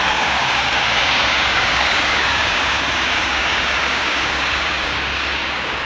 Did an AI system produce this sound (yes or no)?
yes